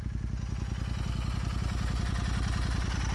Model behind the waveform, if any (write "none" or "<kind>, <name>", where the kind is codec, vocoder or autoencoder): none